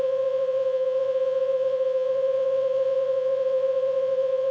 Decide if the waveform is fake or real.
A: fake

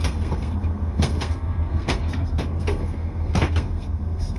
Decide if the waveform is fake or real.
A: fake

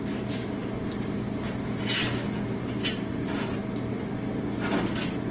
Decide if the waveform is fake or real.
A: real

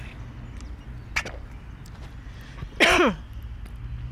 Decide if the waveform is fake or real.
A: real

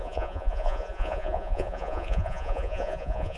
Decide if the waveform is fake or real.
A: fake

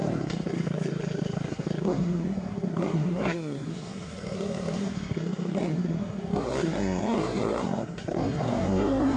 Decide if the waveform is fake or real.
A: fake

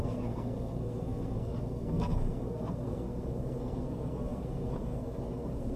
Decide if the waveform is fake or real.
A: fake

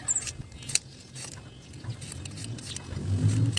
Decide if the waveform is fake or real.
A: real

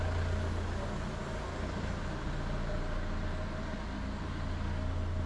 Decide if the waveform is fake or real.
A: real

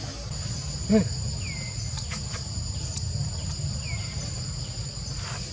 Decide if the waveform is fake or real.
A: real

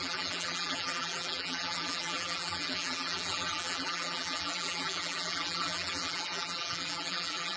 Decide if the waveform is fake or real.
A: fake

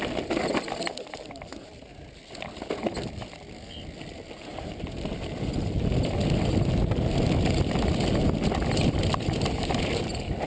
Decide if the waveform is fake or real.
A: real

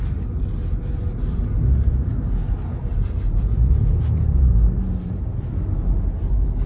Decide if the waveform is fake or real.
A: real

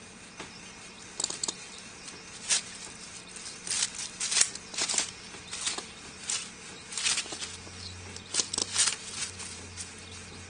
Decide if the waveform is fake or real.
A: real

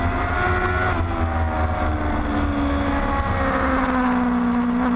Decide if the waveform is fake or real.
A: real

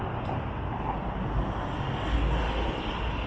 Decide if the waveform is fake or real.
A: real